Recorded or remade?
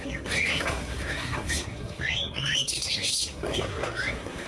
remade